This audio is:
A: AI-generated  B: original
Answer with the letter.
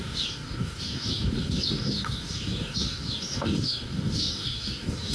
A